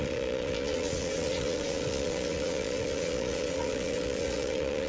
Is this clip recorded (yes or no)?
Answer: no